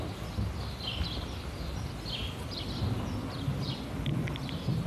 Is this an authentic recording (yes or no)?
yes